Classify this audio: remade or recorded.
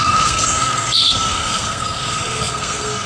remade